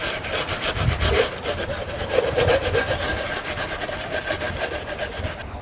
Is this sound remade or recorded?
recorded